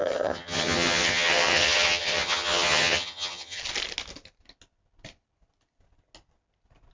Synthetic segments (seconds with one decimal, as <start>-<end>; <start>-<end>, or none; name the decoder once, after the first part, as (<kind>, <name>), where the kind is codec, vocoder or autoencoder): 0.0-3.6 (vocoder, HiFi-GAN)

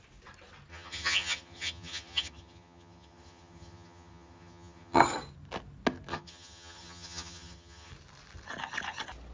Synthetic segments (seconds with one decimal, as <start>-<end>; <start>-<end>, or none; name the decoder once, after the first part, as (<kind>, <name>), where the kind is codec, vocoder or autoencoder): 0.7-5.0 (vocoder, HiFi-GAN); 6.1-7.9

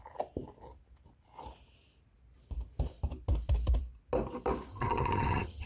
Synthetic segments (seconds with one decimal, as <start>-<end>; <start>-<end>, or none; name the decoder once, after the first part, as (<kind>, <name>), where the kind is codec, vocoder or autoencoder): 4.7-5.7 (vocoder, HiFi-GAN)

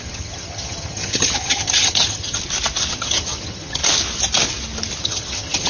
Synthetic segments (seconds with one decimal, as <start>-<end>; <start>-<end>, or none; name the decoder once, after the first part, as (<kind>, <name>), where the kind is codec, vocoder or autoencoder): 0.0-2.4 (vocoder, HiFi-GAN); 2.9-3.8; 5.0-5.7

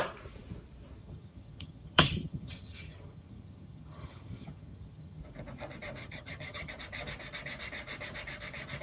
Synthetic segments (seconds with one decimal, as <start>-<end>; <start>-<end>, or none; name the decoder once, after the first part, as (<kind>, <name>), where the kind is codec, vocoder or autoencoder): 1.0-5.2 (vocoder, HiFi-GAN); 6.0-6.7